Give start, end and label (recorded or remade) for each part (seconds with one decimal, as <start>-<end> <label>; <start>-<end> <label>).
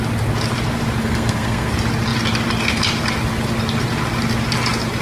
0.0-1.0 recorded; 1.0-1.7 remade; 1.7-5.0 recorded